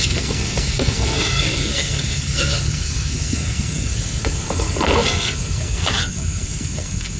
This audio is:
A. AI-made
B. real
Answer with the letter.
A